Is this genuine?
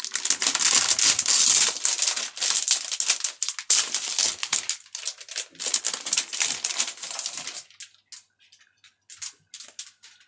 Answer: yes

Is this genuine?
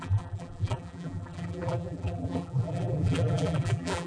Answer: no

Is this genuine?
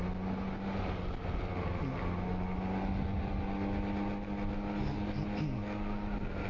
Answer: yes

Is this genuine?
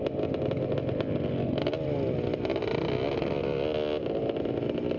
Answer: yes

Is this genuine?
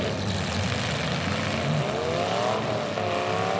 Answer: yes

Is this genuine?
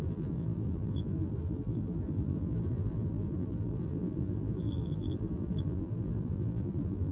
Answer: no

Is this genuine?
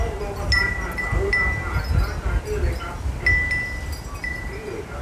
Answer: yes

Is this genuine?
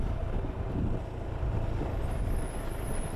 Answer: no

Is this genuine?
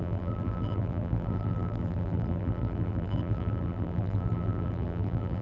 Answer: no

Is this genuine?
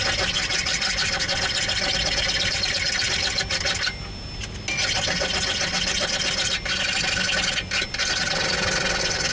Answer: yes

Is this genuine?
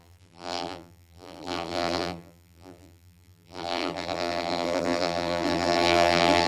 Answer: no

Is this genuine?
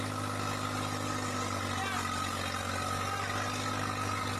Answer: yes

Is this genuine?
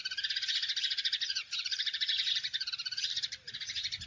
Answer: no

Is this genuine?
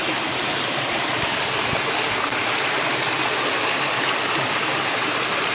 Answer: yes